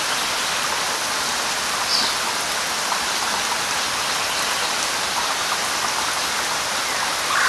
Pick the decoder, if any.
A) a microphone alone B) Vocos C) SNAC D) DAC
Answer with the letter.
A